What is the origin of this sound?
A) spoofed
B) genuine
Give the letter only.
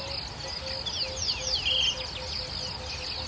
B